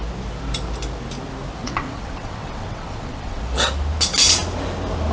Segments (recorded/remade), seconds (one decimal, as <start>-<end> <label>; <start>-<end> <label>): 0.0-1.6 recorded; 1.6-3.4 remade; 3.4-5.1 recorded